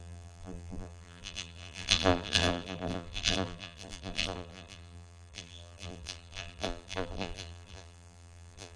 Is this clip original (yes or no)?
no